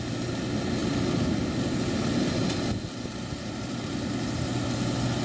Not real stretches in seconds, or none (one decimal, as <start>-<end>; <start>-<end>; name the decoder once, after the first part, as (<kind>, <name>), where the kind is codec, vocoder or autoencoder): none